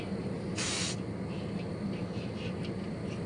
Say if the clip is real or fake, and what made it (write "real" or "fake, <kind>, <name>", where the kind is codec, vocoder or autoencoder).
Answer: real